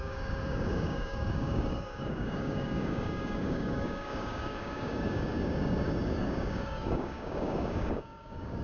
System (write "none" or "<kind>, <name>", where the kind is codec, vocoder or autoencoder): codec, DAC